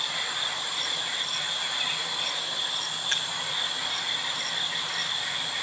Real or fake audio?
real